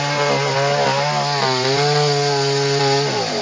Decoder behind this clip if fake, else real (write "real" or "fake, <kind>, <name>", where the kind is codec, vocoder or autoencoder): real